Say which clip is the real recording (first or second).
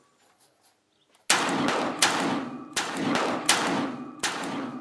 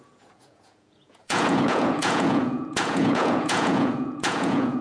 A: first